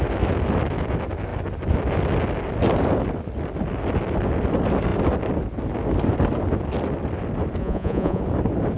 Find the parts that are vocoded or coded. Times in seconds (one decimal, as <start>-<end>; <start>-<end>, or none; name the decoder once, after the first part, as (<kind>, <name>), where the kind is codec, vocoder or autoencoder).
7.6-8.2 (vocoder, Vocos)